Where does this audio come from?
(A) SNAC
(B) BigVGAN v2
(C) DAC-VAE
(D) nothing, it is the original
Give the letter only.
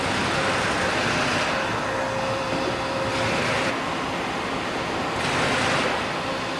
B